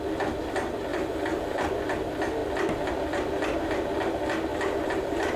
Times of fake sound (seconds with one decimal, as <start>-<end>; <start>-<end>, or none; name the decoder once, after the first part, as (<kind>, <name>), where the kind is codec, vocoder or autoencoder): 0.9-1.7 (vocoder, BigVGAN v2); 4.5-5.4